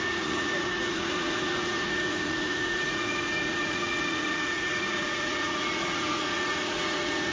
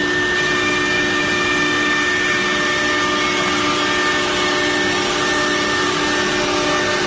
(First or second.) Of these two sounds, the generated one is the first